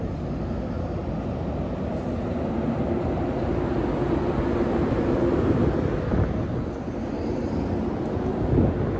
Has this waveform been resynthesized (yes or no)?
no